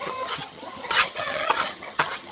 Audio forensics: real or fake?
fake